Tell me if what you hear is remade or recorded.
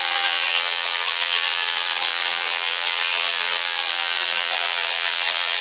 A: remade